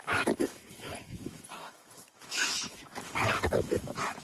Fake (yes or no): yes